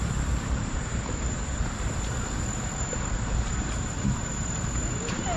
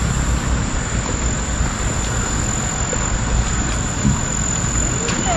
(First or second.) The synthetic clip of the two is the first